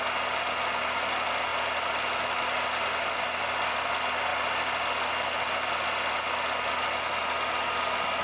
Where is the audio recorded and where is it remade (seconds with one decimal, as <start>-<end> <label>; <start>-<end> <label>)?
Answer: 0.0-8.2 recorded